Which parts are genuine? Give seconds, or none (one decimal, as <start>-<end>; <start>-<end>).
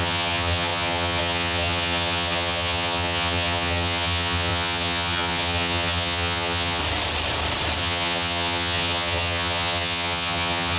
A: 6.8-7.8